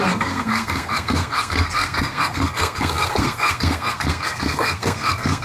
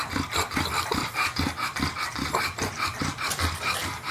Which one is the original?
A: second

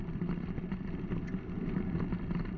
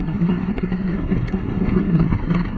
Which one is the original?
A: first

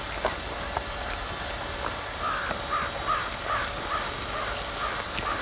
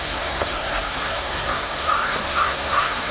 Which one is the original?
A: first